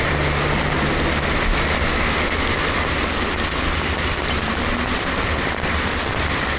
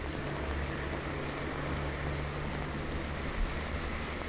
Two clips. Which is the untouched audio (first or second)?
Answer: second